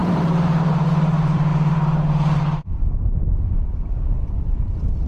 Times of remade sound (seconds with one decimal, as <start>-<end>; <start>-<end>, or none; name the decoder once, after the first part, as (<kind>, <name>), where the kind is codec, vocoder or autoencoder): 0.0-5.1 (vocoder, BigVGAN v2)